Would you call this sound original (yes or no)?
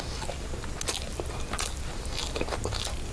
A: yes